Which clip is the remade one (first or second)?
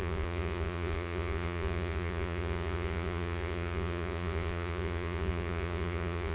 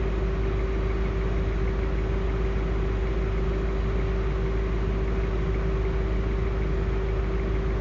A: first